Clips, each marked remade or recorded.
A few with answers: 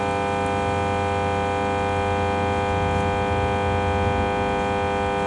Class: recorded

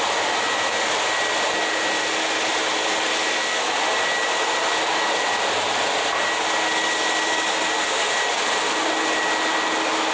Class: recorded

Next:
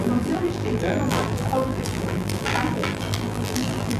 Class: remade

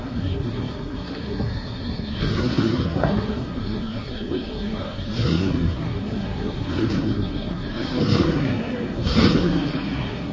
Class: remade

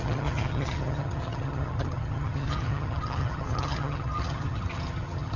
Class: remade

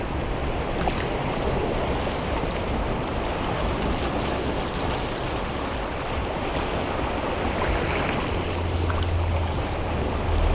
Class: recorded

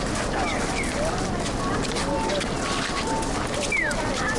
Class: recorded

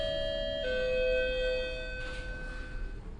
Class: recorded